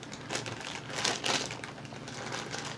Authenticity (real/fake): real